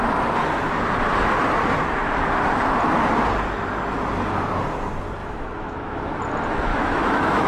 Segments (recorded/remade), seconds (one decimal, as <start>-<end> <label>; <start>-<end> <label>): 0.0-5.2 recorded; 5.2-6.1 remade; 6.1-6.7 recorded; 6.7-7.5 remade